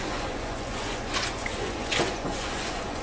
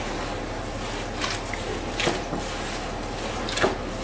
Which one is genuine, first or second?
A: second